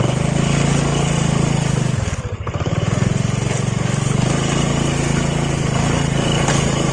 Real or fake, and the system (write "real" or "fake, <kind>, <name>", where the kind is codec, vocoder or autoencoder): real